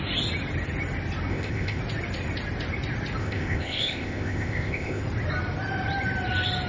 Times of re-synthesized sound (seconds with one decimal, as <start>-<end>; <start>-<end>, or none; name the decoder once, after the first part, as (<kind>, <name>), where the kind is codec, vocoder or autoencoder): 1.3-1.8 (codec, ZipCodec); 3.2-5.0

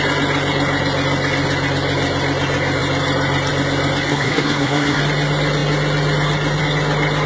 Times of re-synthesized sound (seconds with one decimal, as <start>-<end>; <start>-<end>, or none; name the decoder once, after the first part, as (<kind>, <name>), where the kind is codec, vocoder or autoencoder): 4.1-5.0 (codec, SNAC)

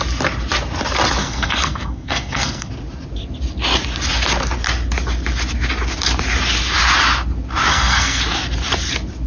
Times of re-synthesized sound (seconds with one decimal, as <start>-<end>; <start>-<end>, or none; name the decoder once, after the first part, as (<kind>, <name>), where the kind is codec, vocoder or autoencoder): 1.2-2.7 (codec, SNAC); 7.7-8.2

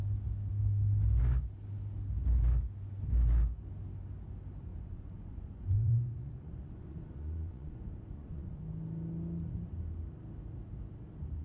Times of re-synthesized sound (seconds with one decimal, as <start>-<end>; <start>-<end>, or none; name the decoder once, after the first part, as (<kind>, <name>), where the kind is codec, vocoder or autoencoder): 4.7-8.6 (vocoder, Vocos)